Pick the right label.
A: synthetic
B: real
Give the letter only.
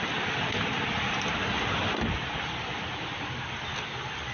B